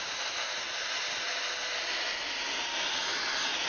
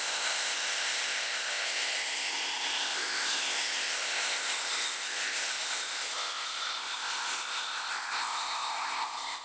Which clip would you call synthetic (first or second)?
second